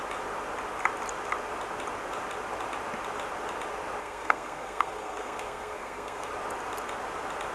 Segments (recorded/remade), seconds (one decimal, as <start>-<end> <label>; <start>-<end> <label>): 0.0-4.0 recorded; 4.0-6.3 remade; 6.3-7.5 recorded